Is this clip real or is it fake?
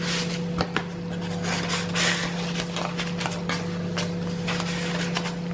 real